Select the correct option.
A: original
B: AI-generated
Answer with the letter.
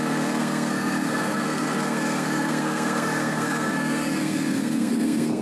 B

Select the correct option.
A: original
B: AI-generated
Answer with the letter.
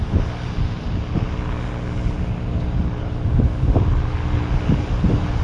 A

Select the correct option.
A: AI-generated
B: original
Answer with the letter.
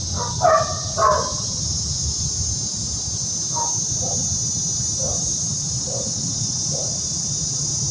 B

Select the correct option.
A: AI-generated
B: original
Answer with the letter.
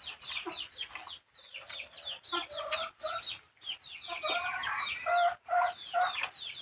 B